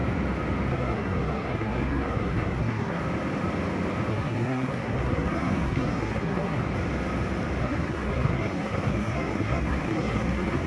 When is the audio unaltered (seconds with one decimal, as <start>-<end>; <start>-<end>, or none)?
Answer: 0.0-0.7; 3.0-4.1; 6.6-7.6